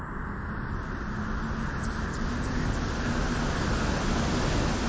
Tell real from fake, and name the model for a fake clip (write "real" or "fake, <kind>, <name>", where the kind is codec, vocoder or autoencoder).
real